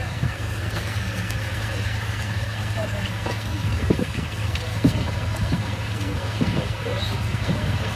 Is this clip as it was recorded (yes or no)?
no